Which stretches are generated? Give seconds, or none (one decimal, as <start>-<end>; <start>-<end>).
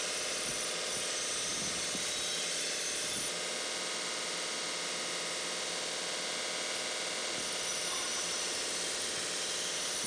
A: none